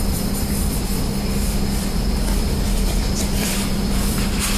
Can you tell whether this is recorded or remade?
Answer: remade